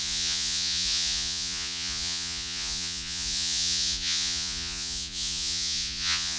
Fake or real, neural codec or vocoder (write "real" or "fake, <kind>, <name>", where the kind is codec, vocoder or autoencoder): fake, vocoder, Vocos